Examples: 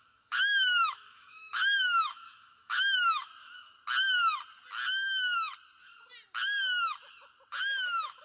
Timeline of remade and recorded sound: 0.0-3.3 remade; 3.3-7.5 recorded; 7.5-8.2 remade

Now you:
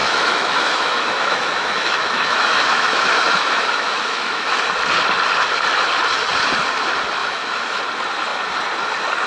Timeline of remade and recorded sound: 0.0-4.6 remade; 4.6-7.2 recorded; 7.2-7.8 remade; 7.8-9.3 recorded

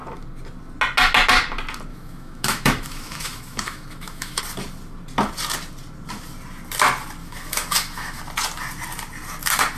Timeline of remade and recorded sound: 0.0-1.9 recorded; 1.9-4.4 remade; 4.4-7.2 recorded; 7.2-8.2 remade; 8.2-9.8 recorded

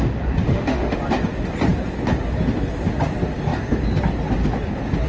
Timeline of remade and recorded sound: 0.0-0.4 recorded; 0.4-1.0 remade; 1.0-5.1 recorded